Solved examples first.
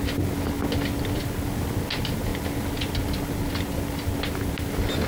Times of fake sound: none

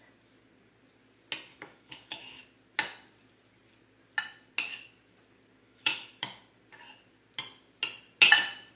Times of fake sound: 1.5-2.4 (autoencoder, DAC-VAE); 5.6-6.2

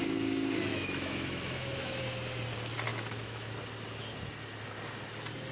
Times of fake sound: 0.7-2.0 (autoencoder, DAC-VAE); 2.9-3.5

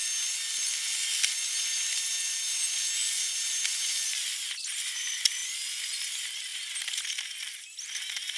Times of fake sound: none

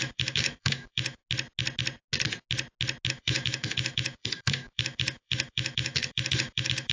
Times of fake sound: 0.0-1.2 (autoencoder, DAC-VAE); 3.1-6.9